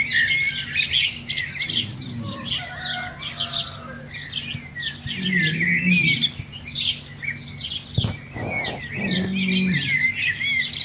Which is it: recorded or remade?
recorded